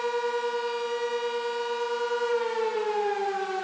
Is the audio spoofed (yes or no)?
no